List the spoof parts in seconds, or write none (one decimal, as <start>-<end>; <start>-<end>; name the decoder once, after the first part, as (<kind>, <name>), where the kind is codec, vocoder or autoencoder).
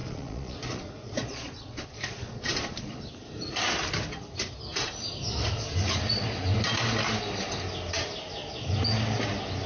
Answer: 0.0-3.0 (vocoder, Vocos)